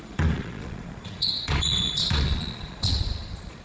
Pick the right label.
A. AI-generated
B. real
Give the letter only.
A